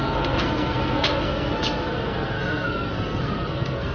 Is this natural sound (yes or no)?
no